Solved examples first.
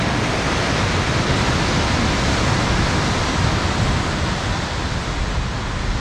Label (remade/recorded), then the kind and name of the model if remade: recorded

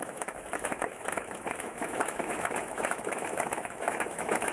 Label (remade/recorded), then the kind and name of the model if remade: remade, autoencoder, DAC-VAE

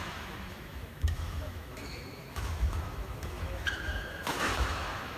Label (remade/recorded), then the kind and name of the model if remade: remade, autoencoder, DAC-VAE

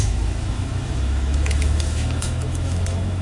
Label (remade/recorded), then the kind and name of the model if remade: remade, autoencoder, DAC-VAE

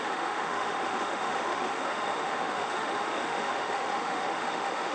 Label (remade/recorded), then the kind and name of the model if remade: remade, autoencoder, DAC-VAE